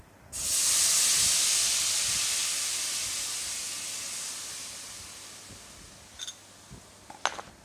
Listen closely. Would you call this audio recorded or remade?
recorded